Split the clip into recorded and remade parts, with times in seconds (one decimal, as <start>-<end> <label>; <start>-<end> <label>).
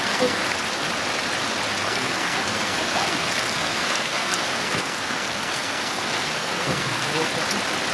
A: 0.0-0.4 remade; 0.4-1.8 recorded; 1.8-7.3 remade; 7.3-7.9 recorded